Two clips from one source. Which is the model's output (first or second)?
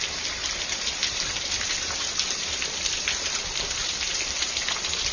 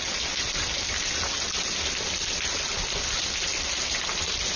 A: first